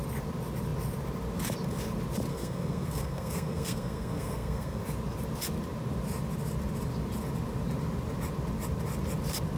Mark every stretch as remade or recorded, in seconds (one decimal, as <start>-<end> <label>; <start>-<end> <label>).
0.0-2.3 recorded; 2.3-4.8 remade; 4.8-9.6 recorded